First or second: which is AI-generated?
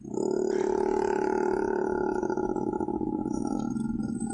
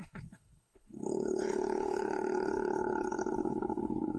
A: second